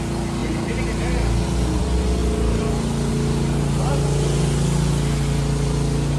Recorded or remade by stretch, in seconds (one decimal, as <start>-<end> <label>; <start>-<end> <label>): 0.0-6.2 recorded